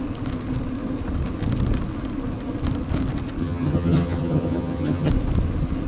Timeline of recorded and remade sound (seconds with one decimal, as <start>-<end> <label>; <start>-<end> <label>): 0.0-3.4 recorded; 3.4-5.1 remade; 5.1-5.9 recorded